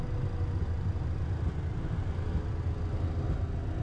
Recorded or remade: recorded